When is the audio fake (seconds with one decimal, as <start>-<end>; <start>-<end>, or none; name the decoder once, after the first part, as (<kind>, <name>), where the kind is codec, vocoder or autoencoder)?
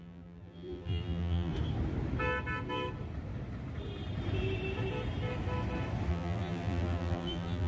0.0-1.5 (vocoder, BigVGAN v2); 6.1-7.7